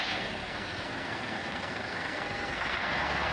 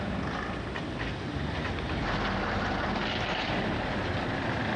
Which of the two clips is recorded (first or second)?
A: second